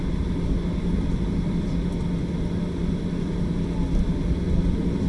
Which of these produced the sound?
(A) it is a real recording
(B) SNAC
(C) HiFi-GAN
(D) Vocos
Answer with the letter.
A